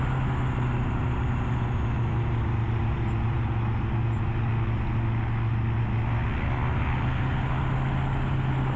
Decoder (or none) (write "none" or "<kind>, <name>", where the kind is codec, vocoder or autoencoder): none